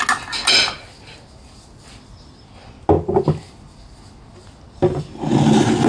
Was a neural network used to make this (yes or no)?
no